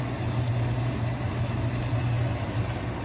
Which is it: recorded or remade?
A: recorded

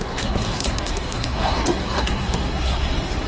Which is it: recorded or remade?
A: remade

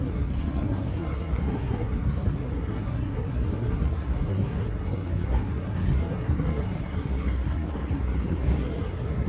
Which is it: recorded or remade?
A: remade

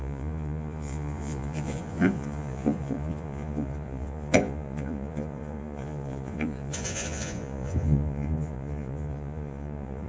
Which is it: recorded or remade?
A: remade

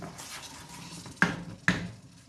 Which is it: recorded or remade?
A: recorded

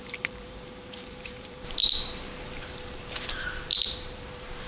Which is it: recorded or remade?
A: remade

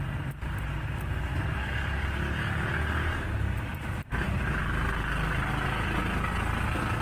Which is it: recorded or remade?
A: recorded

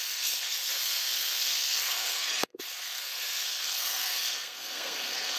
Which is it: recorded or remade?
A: remade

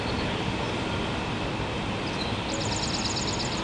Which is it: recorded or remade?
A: recorded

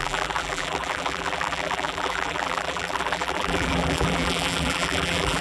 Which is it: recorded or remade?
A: remade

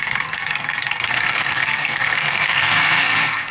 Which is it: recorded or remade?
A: remade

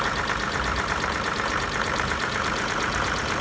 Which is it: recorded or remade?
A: remade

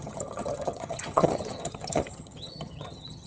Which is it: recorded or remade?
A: remade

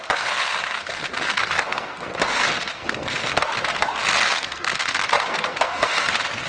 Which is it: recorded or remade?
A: remade